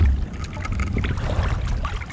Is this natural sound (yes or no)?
yes